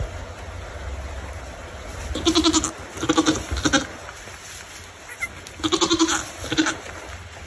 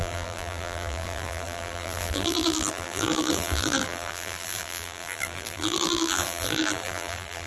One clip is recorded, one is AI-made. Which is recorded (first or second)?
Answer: first